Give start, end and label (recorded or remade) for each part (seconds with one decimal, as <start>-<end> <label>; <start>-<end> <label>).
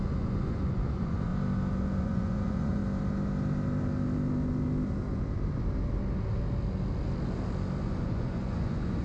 0.0-1.3 remade; 1.3-2.0 recorded; 2.0-2.8 remade; 2.8-7.8 recorded; 7.8-9.0 remade